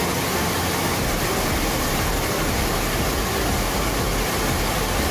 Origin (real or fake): real